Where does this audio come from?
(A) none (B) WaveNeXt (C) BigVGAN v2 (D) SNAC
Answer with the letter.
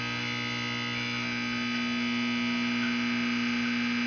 A